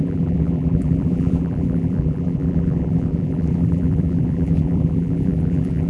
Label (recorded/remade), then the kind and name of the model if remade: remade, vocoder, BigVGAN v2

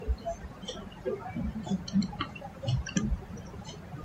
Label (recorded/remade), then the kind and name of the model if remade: remade, vocoder, BigVGAN v2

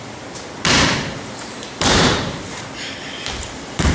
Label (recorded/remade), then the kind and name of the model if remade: remade, vocoder, BigVGAN v2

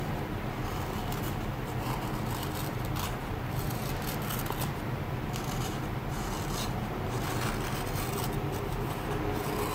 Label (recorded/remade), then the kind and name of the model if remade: remade, vocoder, BigVGAN v2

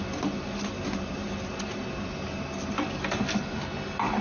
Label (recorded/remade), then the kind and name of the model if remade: recorded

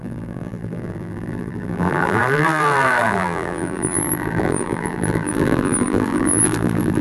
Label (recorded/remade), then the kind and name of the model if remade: remade, vocoder, BigVGAN v2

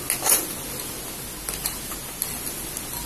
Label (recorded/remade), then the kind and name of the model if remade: recorded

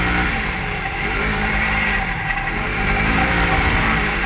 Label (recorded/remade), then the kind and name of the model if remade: remade, vocoder, BigVGAN v2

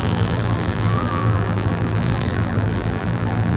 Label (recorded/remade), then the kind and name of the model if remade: remade, vocoder, BigVGAN v2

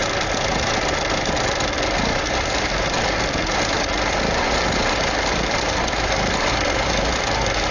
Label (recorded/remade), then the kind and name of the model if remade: recorded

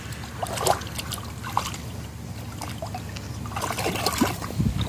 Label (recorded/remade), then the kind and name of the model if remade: recorded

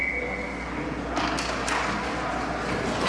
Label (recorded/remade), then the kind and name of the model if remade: recorded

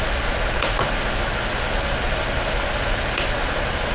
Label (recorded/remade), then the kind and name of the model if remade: recorded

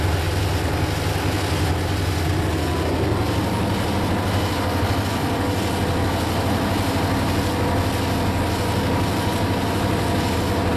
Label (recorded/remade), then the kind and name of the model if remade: recorded